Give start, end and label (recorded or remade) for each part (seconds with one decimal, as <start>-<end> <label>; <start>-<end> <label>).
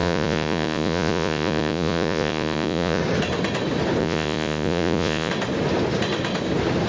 0.0-3.0 remade; 3.0-4.0 recorded; 4.0-5.3 remade; 5.3-6.9 recorded